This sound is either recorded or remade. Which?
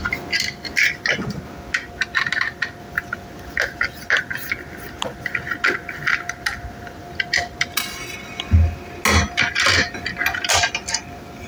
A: recorded